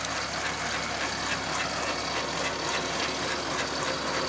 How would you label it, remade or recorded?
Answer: recorded